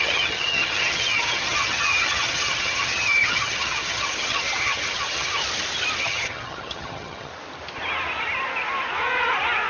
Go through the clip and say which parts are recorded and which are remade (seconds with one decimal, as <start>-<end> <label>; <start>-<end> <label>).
0.0-5.4 remade; 5.4-6.0 recorded; 6.0-7.3 remade; 7.3-9.7 recorded